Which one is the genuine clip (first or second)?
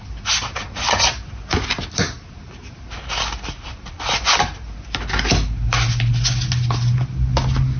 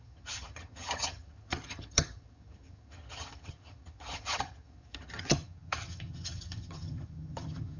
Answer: first